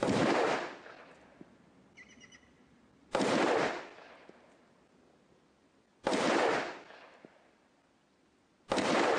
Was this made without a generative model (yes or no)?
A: yes